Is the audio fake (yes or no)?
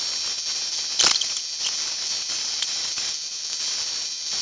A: no